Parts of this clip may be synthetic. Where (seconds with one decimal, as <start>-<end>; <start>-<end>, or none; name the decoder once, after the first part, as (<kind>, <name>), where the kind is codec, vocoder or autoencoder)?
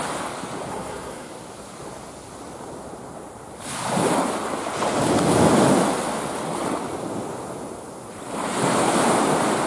0.7-1.3 (codec, SNAC)